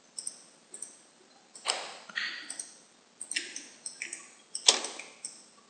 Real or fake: real